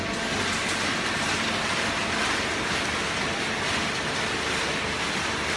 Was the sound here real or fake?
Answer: real